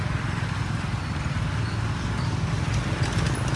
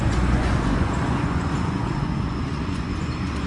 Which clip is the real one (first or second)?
first